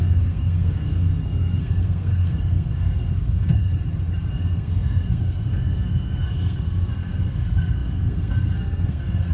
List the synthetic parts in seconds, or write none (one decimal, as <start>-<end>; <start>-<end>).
0.0-3.7; 4.3-9.3